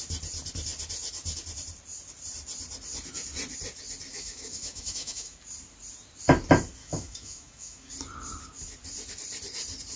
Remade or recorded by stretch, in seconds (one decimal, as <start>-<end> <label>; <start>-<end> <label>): 0.0-4.1 recorded; 4.1-5.4 remade; 5.4-6.8 recorded; 6.8-7.9 remade; 7.9-10.0 recorded